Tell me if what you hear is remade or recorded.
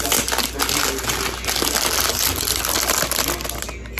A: recorded